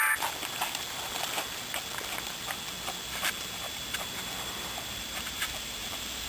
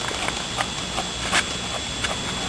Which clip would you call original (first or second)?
second